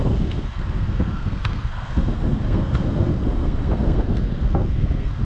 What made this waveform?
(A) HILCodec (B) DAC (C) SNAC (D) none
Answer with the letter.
C